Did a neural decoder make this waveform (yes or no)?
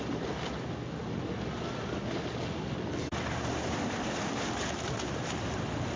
no